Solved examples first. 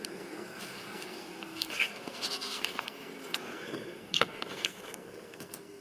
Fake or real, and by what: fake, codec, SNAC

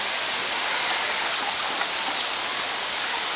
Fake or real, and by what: real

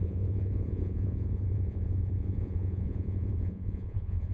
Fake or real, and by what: fake, vocoder, Vocos